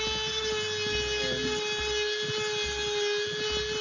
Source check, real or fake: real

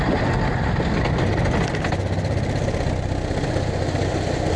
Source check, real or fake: real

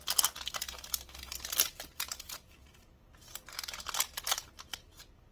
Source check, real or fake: real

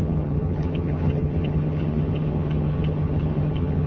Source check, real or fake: fake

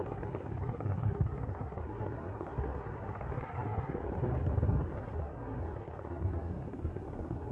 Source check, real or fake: fake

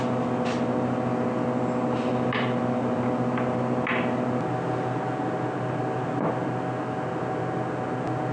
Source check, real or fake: real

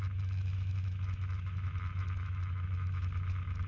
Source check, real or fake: fake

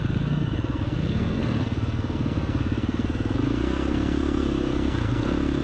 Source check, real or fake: fake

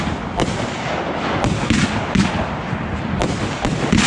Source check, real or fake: real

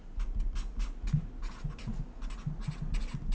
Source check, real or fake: real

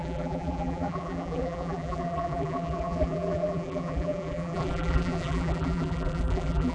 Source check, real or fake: fake